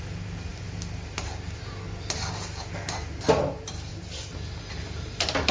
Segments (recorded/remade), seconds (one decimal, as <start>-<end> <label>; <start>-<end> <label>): 0.0-5.5 recorded